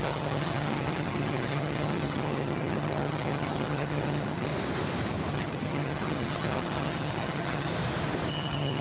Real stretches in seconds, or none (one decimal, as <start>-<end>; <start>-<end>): 4.5-5.3; 7.7-8.3